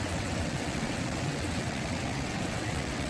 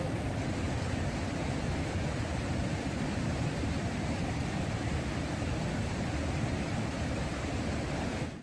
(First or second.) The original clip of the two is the second